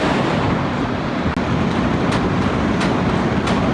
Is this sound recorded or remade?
recorded